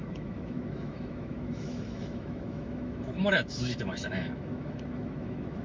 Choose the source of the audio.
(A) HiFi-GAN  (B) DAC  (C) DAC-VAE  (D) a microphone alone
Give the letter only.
C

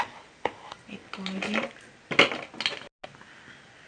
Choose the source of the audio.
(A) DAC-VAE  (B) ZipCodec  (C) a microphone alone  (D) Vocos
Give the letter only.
C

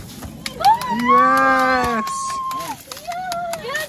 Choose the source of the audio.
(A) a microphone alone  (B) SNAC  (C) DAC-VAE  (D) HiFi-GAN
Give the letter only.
A